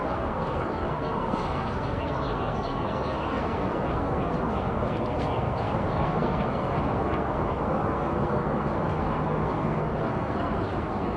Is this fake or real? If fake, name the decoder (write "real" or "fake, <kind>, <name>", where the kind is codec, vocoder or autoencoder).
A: fake, codec, SNAC